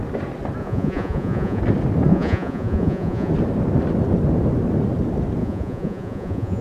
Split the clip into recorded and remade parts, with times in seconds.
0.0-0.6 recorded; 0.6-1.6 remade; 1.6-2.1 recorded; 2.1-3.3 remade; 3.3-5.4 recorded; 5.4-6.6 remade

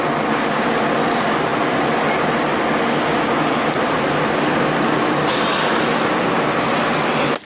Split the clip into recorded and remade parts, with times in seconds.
0.0-7.4 recorded

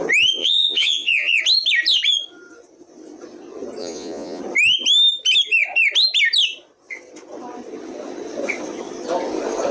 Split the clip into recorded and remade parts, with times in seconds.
0.0-0.4 recorded; 0.4-1.4 remade; 1.4-3.8 recorded; 3.8-4.4 remade; 4.4-9.7 recorded

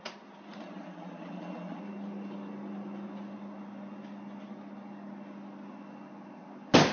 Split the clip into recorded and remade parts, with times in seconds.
0.0-0.5 recorded; 0.5-1.8 remade; 1.8-6.9 recorded

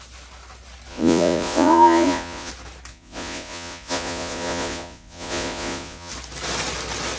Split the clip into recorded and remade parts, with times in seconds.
0.0-0.9 recorded; 0.9-2.5 remade; 2.5-2.9 recorded; 2.9-6.1 remade; 6.1-7.2 recorded